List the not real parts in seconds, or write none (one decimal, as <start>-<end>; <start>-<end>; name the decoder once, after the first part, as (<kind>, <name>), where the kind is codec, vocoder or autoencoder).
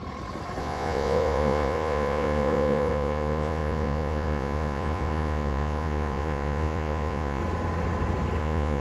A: 0.6-7.4 (vocoder, Vocos); 8.4-8.8